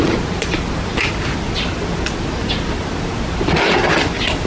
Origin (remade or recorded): recorded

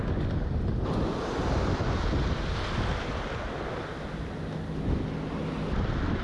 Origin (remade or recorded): recorded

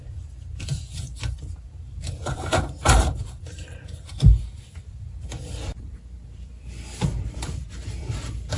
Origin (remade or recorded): remade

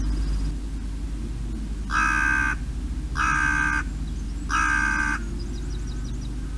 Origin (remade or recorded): recorded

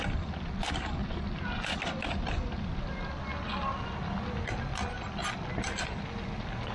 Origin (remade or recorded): recorded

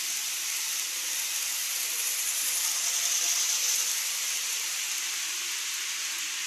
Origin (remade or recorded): remade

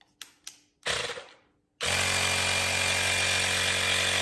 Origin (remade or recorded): recorded